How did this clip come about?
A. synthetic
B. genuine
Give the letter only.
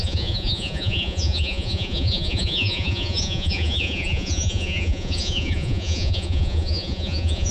A